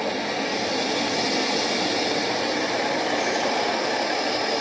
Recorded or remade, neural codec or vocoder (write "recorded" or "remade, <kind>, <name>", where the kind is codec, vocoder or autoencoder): recorded